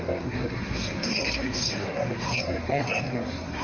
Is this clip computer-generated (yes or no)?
yes